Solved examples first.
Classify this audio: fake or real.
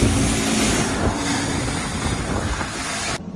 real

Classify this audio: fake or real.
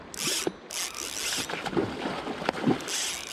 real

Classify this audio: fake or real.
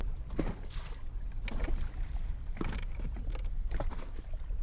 real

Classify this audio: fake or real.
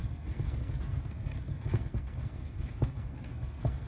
fake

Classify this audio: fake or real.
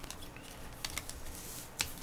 real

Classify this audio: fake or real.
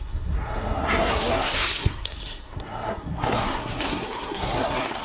fake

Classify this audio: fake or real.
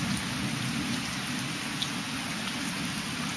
real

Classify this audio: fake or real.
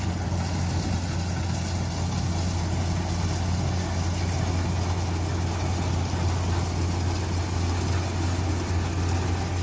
real